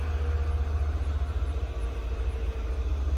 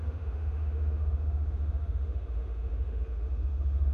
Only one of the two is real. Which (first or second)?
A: first